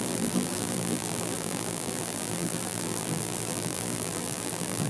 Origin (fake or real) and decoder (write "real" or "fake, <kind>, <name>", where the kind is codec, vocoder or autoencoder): fake, vocoder, BigVGAN v2